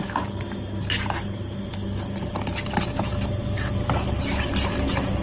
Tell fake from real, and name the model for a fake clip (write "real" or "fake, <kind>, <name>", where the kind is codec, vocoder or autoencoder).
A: real